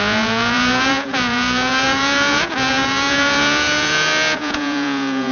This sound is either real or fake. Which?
fake